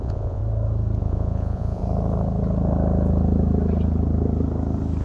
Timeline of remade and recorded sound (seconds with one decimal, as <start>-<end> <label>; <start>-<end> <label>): 0.0-0.4 remade; 0.4-1.0 recorded; 1.0-1.8 remade; 1.8-5.0 recorded